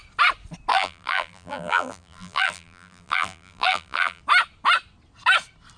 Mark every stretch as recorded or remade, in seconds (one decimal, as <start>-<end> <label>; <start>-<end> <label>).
0.0-0.7 recorded; 0.7-4.2 remade; 4.2-5.8 recorded

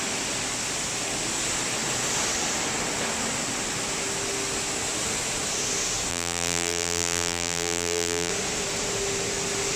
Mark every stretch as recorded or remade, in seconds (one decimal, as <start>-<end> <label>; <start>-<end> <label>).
0.0-6.1 recorded; 6.1-8.3 remade; 8.3-9.8 recorded

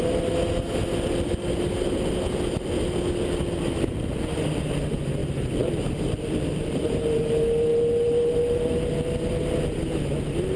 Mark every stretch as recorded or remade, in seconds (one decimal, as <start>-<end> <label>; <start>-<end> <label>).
0.0-5.2 recorded; 5.2-6.8 remade; 6.8-10.6 recorded

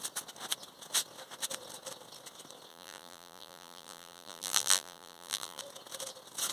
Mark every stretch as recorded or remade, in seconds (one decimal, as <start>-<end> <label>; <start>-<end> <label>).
0.0-2.7 recorded; 2.7-5.6 remade; 5.6-6.5 recorded

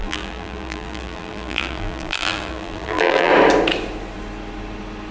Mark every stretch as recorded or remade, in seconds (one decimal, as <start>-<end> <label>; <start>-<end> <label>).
0.0-3.3 remade; 3.3-5.1 recorded